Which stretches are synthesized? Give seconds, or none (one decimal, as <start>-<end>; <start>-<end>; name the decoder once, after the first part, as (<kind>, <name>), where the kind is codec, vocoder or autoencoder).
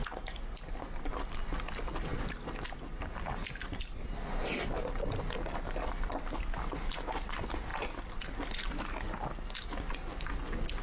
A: none